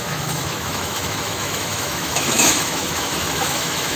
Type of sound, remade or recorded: remade